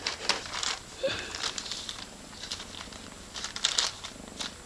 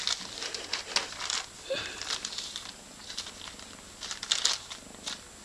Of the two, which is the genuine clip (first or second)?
second